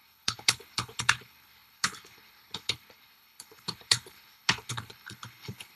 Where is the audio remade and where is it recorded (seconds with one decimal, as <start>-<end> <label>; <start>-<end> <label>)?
0.0-5.8 remade